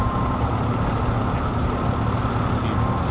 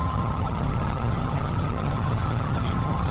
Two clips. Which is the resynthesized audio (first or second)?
second